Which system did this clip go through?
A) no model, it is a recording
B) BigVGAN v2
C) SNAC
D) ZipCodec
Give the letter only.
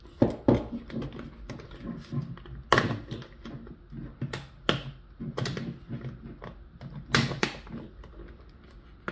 A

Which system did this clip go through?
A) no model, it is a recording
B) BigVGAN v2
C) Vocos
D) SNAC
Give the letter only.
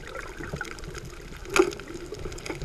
A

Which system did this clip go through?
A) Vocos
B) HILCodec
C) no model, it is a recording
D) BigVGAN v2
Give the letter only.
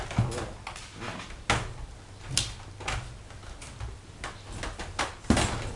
C